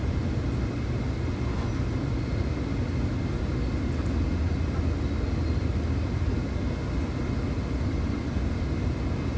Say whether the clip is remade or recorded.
recorded